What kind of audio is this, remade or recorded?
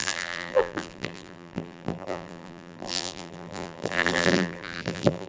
remade